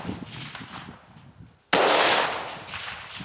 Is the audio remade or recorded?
recorded